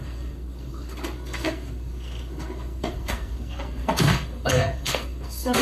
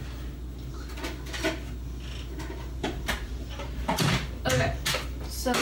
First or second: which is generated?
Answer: first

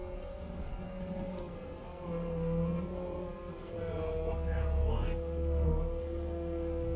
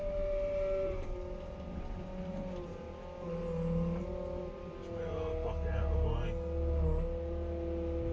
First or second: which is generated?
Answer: first